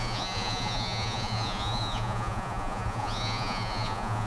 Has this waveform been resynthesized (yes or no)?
yes